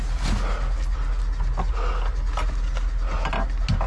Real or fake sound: real